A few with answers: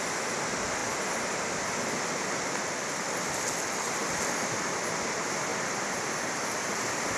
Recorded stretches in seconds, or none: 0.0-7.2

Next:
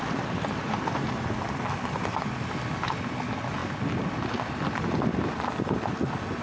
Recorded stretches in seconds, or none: 3.6-4.6

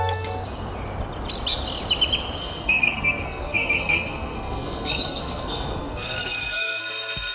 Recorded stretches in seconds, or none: 0.0-2.4; 6.8-7.3

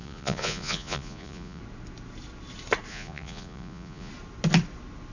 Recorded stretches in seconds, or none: 1.6-2.9; 4.1-5.1

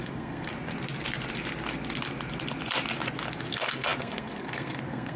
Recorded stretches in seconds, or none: 0.5-3.5